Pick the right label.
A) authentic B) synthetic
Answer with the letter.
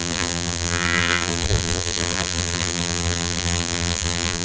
B